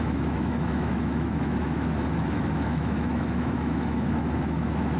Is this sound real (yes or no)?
no